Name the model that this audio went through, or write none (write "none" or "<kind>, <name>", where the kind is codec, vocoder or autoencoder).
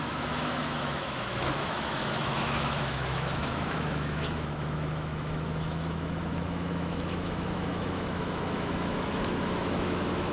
autoencoder, DAC-VAE